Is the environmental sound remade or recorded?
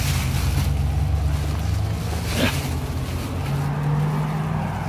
recorded